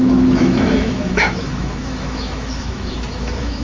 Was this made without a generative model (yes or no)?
no